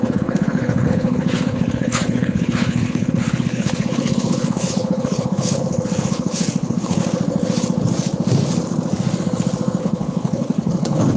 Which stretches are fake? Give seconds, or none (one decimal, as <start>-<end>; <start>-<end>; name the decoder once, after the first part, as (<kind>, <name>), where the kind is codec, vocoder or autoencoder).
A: 0.0-7.0 (codec, HILCodec); 9.8-11.2